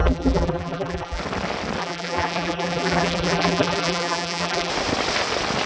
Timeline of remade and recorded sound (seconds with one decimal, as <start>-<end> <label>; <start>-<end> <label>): 0.0-1.2 remade; 1.2-1.8 recorded; 1.8-4.7 remade; 4.7-5.7 recorded